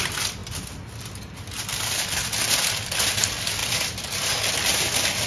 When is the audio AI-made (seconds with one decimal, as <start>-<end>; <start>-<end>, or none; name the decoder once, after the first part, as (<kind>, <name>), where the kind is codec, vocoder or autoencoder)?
none